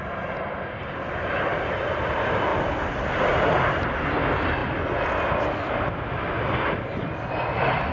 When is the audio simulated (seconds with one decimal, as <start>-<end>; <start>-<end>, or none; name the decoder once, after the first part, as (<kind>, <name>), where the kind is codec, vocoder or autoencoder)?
none